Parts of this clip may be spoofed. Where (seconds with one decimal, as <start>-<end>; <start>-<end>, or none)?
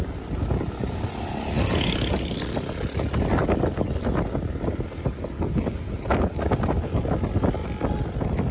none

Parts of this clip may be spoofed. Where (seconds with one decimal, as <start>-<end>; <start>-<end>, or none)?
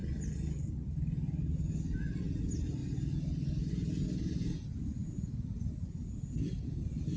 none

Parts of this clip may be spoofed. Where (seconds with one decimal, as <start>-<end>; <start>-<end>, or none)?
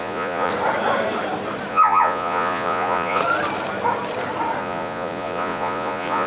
0.0-0.5; 1.7-3.2; 4.6-6.3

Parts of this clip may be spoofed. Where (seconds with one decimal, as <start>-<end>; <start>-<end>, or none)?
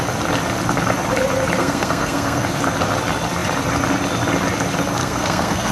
1.6-2.6; 5.0-5.7